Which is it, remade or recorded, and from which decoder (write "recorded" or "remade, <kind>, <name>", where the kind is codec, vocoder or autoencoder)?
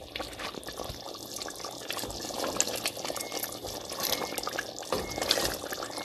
recorded